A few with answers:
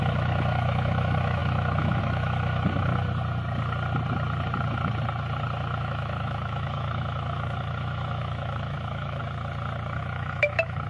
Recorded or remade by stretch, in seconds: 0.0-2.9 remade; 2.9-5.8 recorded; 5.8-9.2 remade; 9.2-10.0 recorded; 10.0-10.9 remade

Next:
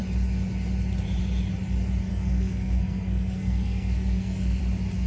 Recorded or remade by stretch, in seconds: 0.0-2.1 recorded; 2.1-4.6 remade; 4.6-5.1 recorded

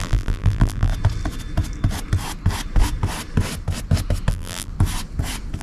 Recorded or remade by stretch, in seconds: 0.0-0.9 remade; 0.9-4.3 recorded; 4.3-4.7 remade; 4.7-5.6 recorded